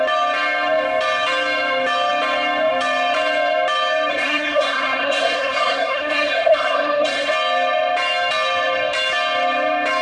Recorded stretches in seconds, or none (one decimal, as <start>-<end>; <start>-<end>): 0.0-4.1; 7.3-10.0